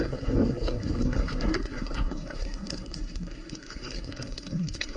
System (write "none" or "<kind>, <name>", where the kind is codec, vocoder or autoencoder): codec, SNAC